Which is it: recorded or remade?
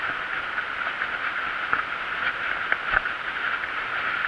recorded